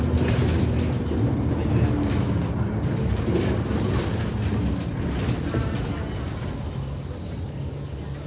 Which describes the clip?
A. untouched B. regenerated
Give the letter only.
A